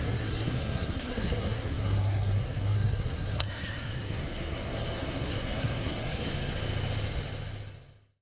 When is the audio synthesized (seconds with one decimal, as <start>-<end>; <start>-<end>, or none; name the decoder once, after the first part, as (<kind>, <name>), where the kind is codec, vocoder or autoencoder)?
0.0-6.3 (codec, SNAC)